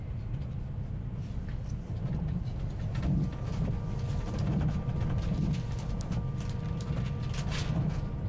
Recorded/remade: recorded